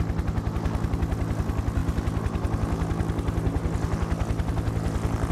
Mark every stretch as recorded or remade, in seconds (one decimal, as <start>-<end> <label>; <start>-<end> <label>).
0.0-5.3 recorded